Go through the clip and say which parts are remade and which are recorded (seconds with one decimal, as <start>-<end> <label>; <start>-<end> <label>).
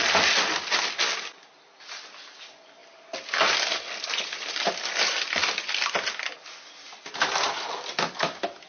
0.0-8.7 recorded